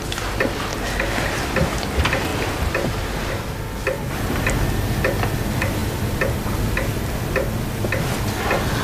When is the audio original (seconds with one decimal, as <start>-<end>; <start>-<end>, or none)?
0.0-0.7; 1.3-2.3; 3.3-5.8; 6.5-8.8